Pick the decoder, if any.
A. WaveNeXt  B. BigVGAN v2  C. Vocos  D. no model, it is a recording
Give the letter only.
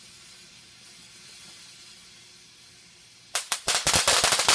D